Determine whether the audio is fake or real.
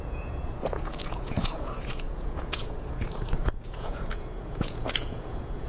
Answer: fake